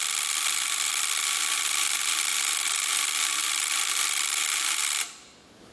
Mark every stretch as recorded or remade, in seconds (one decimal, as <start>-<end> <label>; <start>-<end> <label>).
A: 0.0-2.3 remade; 2.3-2.9 recorded; 2.9-5.7 remade